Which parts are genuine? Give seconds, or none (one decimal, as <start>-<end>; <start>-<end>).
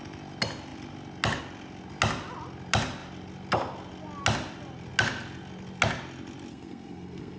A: 0.0-6.5